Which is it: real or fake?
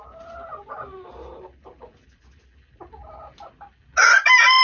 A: real